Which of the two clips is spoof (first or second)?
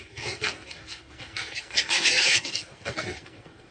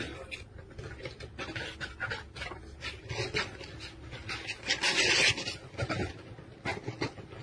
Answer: first